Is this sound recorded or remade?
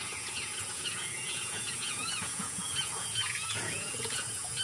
remade